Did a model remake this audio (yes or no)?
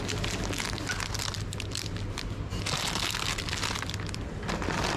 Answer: no